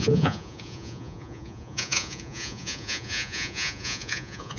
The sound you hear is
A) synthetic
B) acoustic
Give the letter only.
A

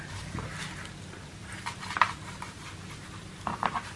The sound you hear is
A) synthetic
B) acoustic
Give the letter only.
B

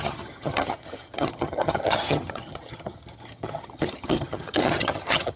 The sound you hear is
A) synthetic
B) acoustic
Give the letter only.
A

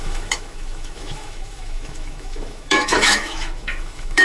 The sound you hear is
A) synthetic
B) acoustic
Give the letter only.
A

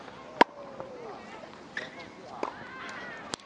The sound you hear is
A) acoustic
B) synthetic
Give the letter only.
A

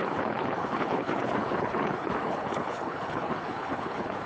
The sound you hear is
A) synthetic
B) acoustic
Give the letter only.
A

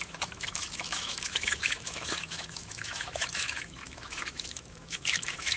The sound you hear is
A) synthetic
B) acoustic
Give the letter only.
A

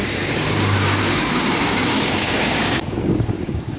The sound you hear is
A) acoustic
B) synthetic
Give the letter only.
B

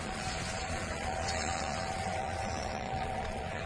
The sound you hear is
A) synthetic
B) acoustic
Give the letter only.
A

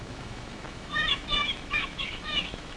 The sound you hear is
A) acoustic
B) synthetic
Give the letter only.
B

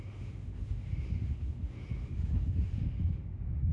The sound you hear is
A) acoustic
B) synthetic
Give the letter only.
B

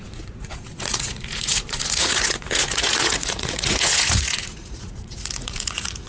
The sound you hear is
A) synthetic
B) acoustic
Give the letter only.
A